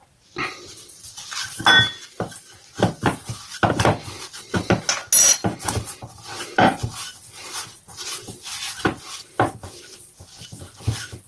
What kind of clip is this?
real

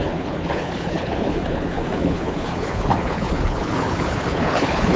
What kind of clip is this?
fake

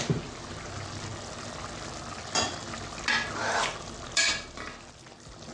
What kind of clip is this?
real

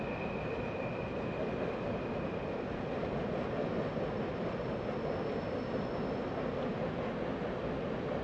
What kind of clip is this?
real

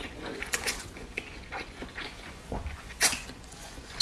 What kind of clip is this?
fake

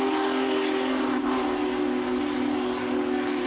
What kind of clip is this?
real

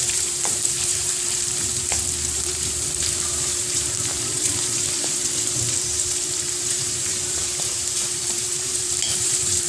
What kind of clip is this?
fake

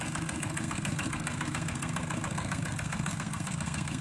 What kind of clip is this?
fake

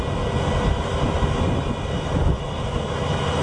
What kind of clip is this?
real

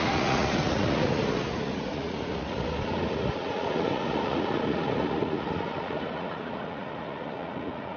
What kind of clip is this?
fake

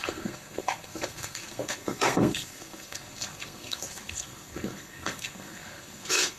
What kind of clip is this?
fake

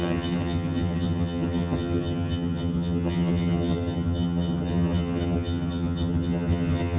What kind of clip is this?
fake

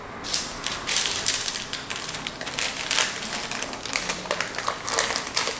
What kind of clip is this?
real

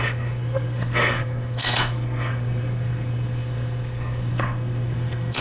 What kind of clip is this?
fake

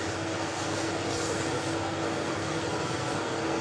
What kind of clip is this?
fake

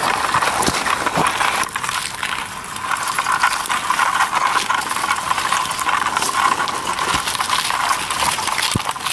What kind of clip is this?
real